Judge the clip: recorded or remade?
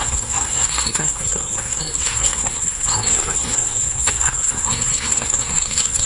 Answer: remade